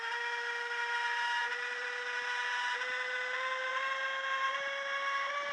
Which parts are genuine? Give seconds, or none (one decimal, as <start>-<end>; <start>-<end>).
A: 0.0-1.4; 2.0-5.5